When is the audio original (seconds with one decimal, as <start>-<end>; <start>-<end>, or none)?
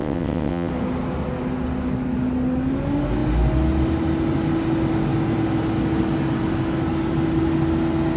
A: 0.7-8.2